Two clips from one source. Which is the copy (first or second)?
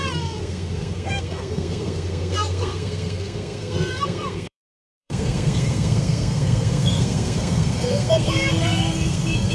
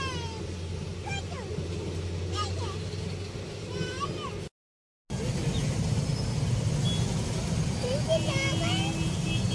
first